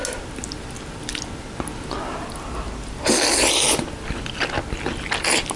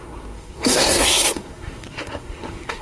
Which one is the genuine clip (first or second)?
first